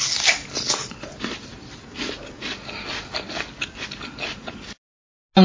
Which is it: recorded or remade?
recorded